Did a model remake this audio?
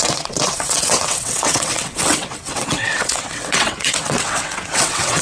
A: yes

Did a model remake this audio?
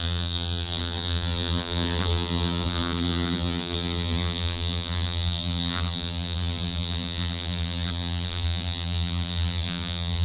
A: yes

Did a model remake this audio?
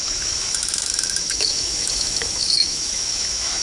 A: yes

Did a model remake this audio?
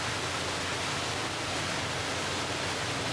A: no